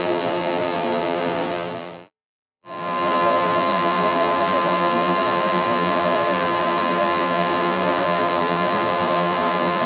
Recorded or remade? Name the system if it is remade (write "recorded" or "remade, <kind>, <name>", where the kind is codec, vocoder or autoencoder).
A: remade, vocoder, BigVGAN v2